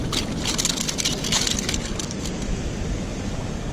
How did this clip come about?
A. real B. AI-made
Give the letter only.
A